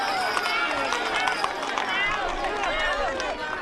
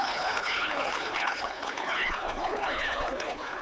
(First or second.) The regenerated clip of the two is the second